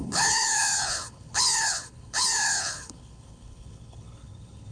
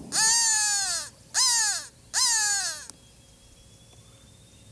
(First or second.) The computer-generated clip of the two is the first